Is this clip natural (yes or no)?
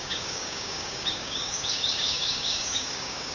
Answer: no